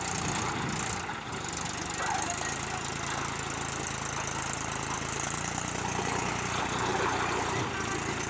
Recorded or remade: recorded